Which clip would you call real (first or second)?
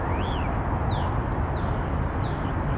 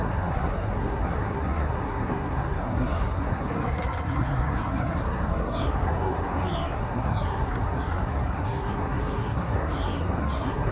first